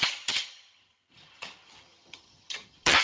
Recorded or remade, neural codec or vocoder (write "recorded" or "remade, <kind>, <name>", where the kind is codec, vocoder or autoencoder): remade, vocoder, HiFi-GAN